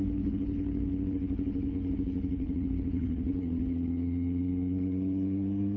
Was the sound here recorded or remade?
remade